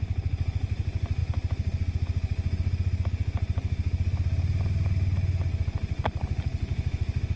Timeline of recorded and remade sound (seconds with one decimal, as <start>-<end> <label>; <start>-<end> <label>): 0.0-6.7 recorded; 6.7-7.4 remade